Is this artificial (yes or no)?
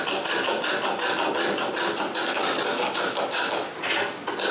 no